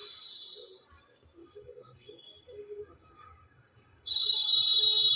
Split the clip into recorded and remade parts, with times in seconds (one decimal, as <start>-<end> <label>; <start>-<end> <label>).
0.0-1.4 recorded; 1.4-4.5 remade; 4.5-5.2 recorded